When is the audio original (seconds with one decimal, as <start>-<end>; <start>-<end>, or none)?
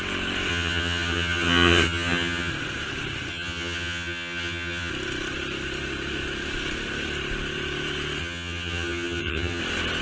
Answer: 0.0-0.5; 2.5-3.3; 4.9-8.2; 9.6-10.0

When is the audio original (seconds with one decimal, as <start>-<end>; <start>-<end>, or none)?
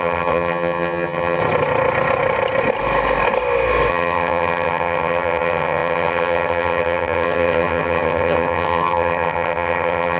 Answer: 1.4-3.9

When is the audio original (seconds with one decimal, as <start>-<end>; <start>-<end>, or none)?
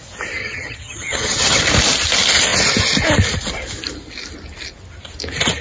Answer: 0.0-0.4; 1.6-5.6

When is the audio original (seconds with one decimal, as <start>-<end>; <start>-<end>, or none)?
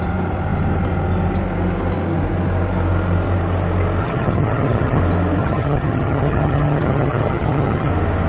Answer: 0.0-4.0; 5.0-5.4; 7.9-8.3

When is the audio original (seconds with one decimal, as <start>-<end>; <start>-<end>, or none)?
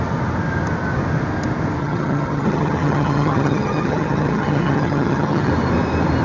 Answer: 0.0-1.8; 5.5-6.2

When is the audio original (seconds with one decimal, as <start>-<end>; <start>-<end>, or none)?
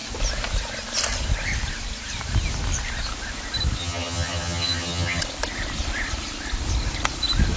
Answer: 0.0-3.8; 5.2-7.6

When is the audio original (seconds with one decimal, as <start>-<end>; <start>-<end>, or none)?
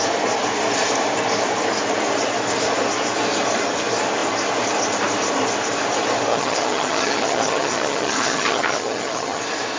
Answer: 0.0-6.3; 9.4-9.8